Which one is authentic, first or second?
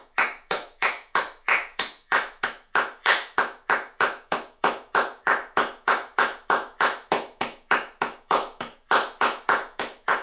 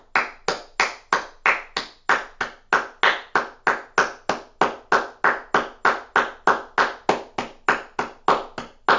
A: second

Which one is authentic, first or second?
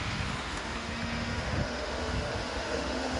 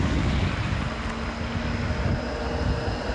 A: second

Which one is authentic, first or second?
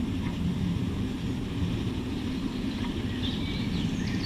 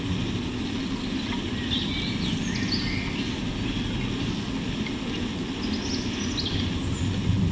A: second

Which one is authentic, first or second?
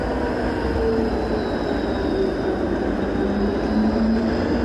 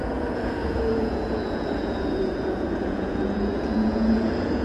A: first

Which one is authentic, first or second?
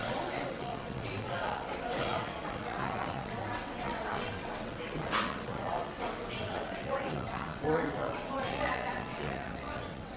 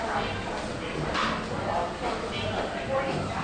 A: second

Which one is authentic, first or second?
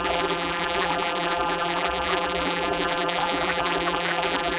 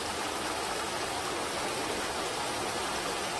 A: second